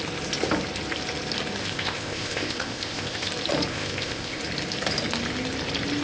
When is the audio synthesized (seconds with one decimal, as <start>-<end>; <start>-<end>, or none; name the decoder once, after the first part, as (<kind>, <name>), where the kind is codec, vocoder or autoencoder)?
1.6-3.3 (codec, ZipCodec); 3.7-4.4